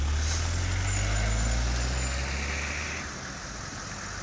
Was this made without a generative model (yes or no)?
yes